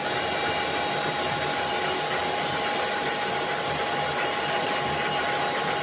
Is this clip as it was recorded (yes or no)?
yes